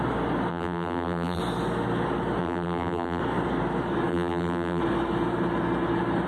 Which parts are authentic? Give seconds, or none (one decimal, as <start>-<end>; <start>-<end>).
0.0-0.5; 1.4-2.4; 3.2-4.1; 4.8-6.3

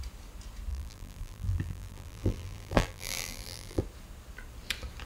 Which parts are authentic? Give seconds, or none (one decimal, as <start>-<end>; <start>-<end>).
0.0-0.7; 3.8-5.1

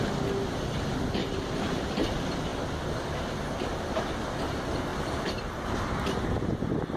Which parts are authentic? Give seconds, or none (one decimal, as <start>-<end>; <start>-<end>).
0.0-1.2; 1.9-4.9; 6.6-7.0

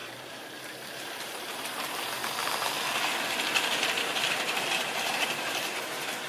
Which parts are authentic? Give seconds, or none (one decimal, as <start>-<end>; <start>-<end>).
2.2-3.6

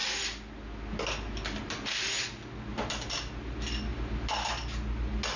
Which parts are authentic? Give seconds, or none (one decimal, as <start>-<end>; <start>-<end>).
0.0-2.7; 3.3-3.9

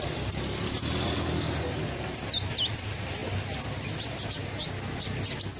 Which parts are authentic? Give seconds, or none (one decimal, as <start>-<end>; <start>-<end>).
0.0-5.6